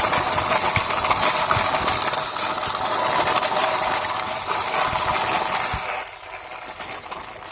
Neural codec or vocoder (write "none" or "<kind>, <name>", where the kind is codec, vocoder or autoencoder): none